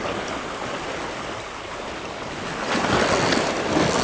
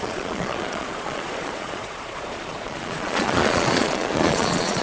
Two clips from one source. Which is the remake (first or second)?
second